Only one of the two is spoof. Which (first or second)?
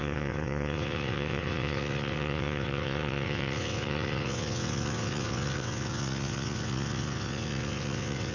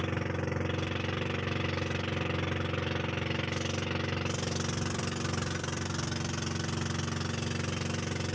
first